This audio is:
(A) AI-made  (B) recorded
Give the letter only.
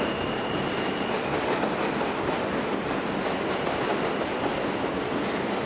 B